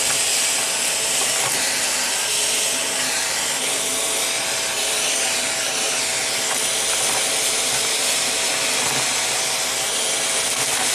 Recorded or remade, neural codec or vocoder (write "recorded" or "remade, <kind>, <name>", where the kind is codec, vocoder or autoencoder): recorded